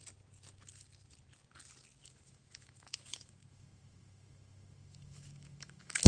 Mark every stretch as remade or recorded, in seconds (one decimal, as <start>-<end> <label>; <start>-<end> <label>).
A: 0.0-2.0 recorded; 2.0-6.1 remade